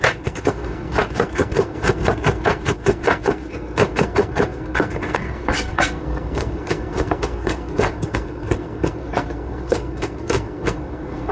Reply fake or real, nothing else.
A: fake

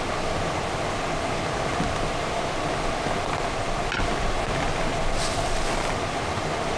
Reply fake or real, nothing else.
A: real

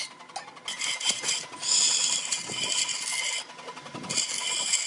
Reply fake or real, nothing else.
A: real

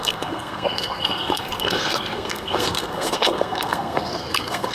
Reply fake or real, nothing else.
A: fake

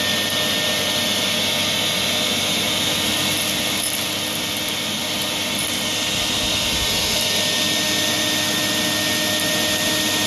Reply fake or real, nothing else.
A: real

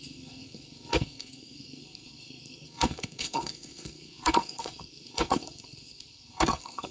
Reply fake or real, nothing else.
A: fake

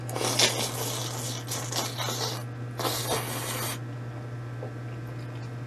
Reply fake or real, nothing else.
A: real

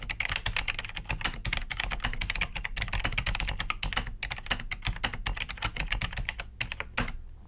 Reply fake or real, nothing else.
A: real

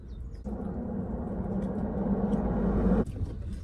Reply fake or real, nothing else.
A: real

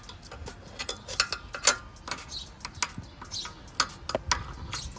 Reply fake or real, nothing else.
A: real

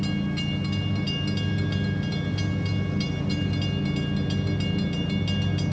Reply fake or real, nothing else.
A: real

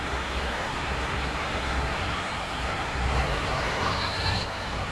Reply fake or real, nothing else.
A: fake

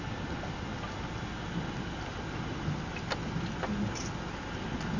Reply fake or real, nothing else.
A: real